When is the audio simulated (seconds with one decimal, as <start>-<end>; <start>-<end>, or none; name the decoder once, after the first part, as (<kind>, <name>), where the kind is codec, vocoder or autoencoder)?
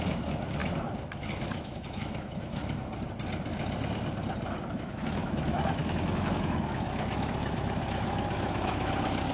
0.0-0.6 (autoencoder, DAC-VAE); 1.4-2.6; 4.7-9.3